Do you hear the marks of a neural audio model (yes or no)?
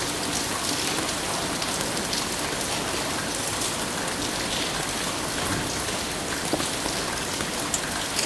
no